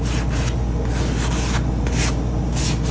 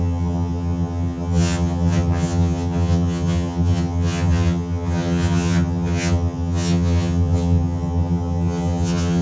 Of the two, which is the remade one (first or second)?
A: second